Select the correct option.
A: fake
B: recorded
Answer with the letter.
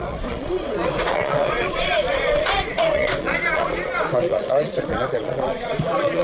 A